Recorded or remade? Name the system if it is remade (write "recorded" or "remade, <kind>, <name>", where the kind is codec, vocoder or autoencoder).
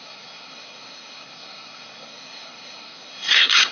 remade, codec, SNAC